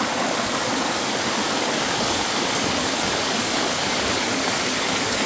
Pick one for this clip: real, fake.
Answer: fake